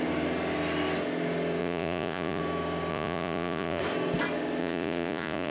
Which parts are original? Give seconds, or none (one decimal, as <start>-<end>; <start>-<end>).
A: 0.0-1.6; 2.4-2.9; 3.8-4.6